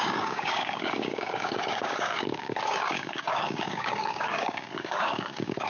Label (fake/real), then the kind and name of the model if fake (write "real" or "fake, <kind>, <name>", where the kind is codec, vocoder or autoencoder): fake, codec, DAC